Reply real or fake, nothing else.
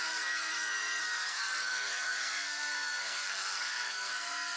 fake